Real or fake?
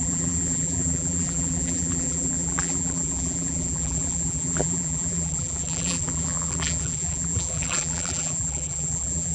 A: fake